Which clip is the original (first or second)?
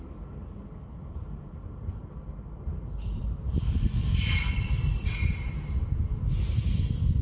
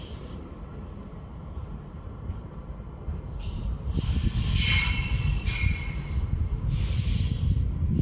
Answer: first